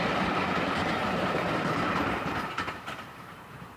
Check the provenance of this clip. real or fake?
fake